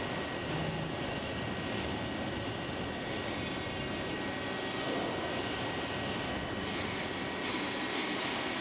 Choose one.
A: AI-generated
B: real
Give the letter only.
B